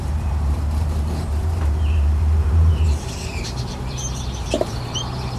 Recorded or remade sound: remade